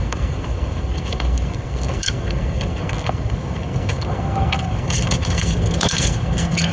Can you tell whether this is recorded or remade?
remade